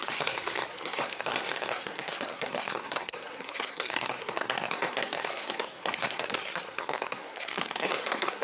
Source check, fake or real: fake